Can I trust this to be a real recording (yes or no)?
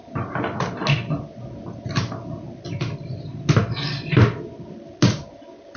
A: yes